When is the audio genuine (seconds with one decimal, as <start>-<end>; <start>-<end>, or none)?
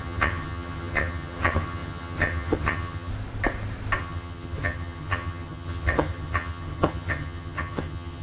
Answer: 3.1-4.0